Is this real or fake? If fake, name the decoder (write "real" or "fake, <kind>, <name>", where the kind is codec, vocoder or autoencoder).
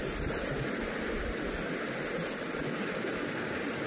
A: real